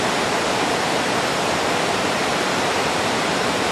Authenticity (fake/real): fake